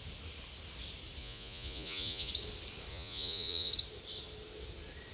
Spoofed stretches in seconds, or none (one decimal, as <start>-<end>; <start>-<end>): 1.2-2.3; 2.9-3.7

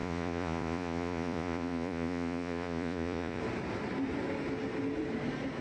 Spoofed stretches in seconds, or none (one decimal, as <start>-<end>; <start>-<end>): 0.0-3.4

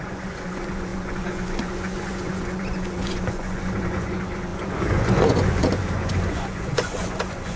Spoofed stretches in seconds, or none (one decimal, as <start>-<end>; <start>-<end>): 0.0-7.6

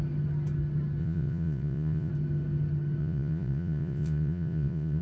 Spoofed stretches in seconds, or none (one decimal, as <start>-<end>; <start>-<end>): 1.0-2.1; 3.0-5.0

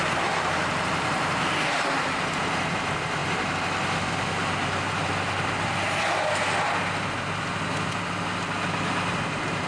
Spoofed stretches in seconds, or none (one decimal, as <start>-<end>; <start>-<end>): none